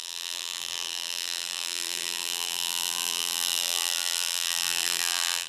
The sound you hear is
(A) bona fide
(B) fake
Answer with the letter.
B